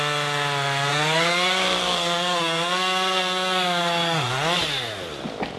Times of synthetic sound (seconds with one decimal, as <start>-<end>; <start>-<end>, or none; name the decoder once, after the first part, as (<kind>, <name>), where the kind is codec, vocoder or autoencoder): 0.9-4.3 (codec, SNAC)